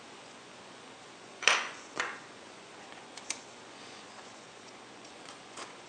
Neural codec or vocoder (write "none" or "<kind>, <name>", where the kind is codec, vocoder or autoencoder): vocoder, Vocos